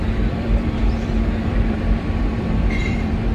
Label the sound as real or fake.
fake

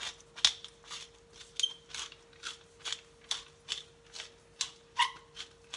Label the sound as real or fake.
real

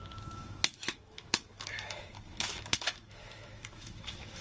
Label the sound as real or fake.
fake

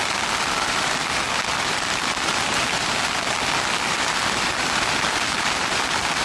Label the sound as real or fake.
fake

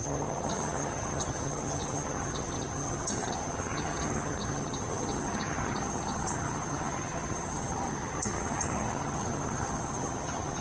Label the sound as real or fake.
fake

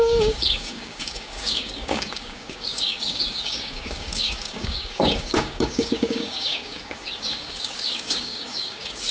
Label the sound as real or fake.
fake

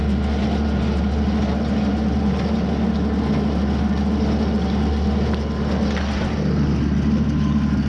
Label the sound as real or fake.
real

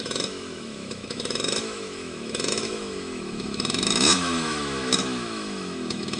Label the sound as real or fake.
fake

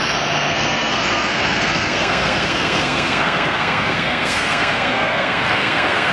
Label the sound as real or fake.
fake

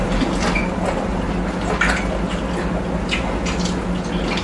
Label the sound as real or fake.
real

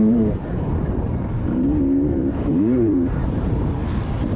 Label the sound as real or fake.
fake